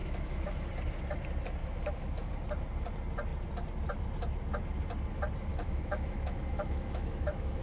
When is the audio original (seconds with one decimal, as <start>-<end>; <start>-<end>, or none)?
0.7-1.6; 2.3-5.5